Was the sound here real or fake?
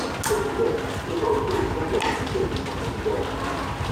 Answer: real